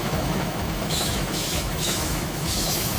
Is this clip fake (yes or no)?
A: yes